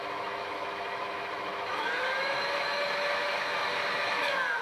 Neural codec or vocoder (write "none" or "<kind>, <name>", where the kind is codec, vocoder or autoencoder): autoencoder, DAC-VAE